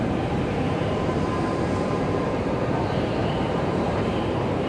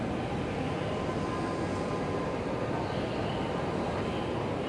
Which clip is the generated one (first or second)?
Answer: first